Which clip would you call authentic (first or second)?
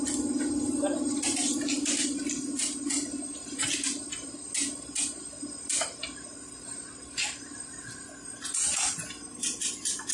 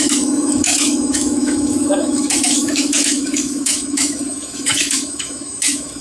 first